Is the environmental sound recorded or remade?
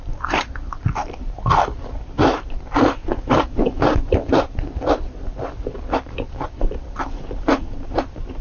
remade